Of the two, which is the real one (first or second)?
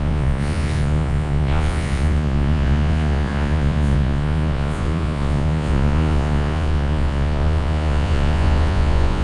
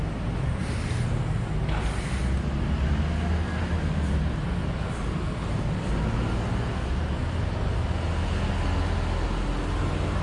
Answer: second